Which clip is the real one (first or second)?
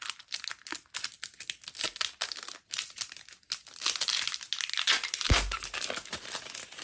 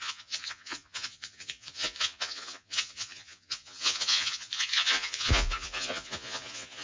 first